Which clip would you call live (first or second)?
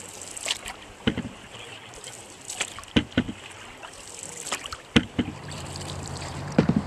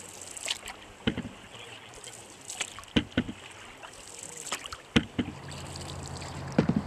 second